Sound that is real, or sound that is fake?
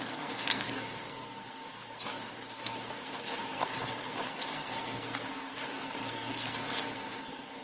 fake